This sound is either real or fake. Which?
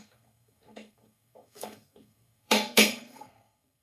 fake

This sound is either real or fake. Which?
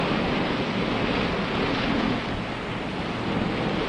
real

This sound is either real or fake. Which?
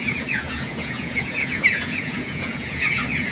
fake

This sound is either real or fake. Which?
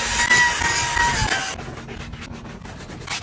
real